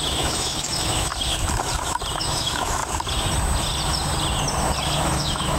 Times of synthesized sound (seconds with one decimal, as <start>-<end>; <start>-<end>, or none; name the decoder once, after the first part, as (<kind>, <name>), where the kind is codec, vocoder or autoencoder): 0.0-1.1 (autoencoder, DAC-VAE); 2.2-2.8; 5.0-5.6